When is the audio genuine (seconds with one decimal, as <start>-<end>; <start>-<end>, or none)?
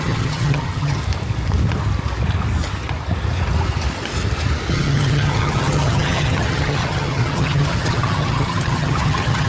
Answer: 1.0-4.7